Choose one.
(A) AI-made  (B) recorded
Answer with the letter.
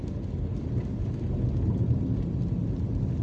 B